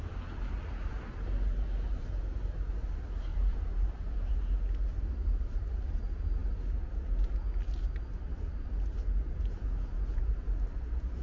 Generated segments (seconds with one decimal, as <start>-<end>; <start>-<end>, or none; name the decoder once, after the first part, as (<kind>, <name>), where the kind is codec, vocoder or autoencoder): 3.3-4.3 (vocoder, BigVGAN v2); 5.2-6.0